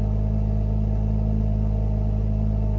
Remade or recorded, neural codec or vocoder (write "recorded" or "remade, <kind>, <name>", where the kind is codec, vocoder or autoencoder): recorded